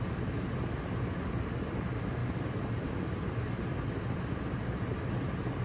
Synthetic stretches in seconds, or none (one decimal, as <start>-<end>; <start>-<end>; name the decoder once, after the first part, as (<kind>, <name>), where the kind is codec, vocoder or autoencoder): none